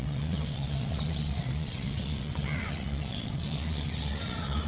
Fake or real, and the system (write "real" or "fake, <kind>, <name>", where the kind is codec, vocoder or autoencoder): fake, vocoder, WaveNeXt